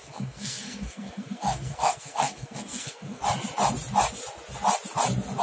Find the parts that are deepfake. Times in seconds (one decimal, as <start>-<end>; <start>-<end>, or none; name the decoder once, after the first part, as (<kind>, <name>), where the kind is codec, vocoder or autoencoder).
0.0-3.2 (codec, SNAC)